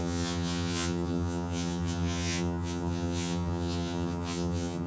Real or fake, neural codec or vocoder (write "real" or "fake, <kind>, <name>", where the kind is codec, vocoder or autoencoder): fake, vocoder, HiFi-GAN